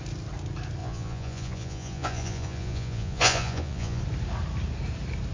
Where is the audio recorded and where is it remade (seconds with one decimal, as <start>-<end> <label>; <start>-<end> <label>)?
0.0-0.8 recorded; 0.8-4.0 remade; 4.0-5.3 recorded